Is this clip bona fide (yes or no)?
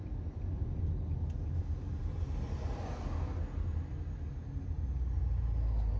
yes